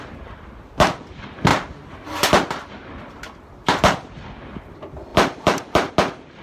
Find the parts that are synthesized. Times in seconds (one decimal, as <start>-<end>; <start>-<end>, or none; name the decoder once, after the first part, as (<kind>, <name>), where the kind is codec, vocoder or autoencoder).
5.1-5.9 (vocoder, BigVGAN v2)